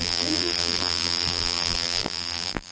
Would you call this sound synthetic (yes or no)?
yes